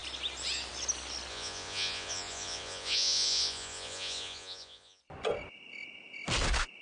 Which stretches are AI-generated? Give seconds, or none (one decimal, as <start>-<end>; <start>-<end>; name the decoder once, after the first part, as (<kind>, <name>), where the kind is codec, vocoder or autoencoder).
1.3-5.0 (vocoder, Vocos)